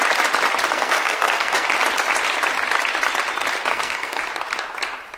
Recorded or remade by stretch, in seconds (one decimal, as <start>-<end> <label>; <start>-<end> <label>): 0.0-0.7 recorded; 0.7-1.7 remade; 1.7-3.7 recorded; 3.7-4.2 remade; 4.2-5.2 recorded